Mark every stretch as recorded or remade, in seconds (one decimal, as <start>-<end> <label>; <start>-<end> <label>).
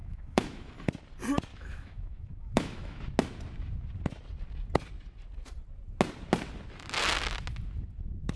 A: 0.0-0.7 remade; 0.7-1.5 recorded; 1.5-3.0 remade; 3.0-8.4 recorded